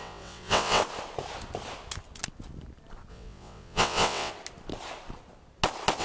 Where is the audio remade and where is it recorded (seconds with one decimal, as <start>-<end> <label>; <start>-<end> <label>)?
0.0-0.8 remade; 0.8-3.1 recorded; 3.1-4.3 remade; 4.3-6.0 recorded